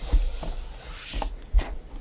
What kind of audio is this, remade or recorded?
recorded